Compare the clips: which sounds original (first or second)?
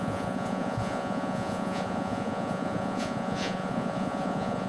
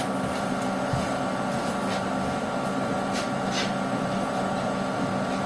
second